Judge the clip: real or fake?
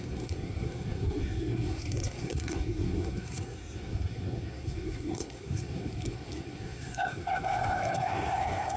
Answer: fake